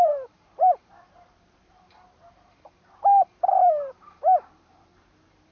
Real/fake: fake